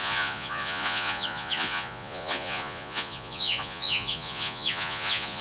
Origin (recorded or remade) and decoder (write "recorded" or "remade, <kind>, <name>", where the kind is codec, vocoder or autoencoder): remade, vocoder, Vocos